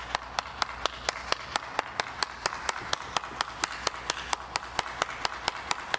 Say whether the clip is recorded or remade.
recorded